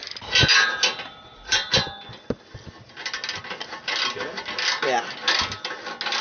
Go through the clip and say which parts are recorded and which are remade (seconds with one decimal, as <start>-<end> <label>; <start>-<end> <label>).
0.0-6.2 recorded

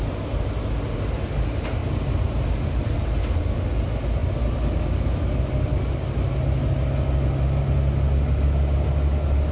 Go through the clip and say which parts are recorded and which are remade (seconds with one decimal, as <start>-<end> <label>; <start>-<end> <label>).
0.0-9.5 recorded